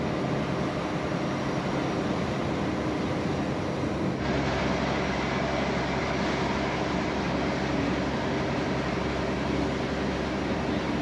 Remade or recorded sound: recorded